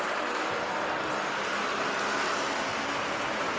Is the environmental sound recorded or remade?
recorded